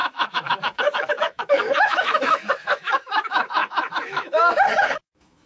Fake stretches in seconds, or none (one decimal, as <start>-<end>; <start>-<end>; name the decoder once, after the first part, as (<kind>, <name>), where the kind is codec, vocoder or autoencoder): 0.0-5.5 (autoencoder, DAC-VAE)